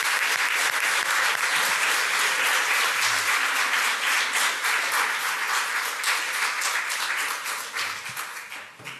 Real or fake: real